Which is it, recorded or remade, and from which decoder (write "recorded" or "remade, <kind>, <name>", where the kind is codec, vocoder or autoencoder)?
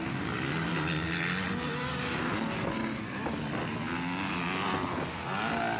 recorded